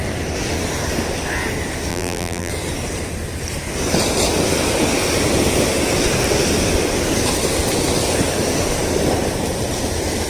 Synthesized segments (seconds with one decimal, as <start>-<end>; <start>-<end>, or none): 1.9-2.5